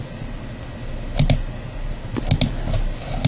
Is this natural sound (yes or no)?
yes